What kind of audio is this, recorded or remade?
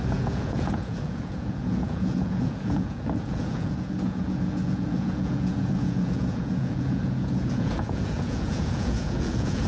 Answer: remade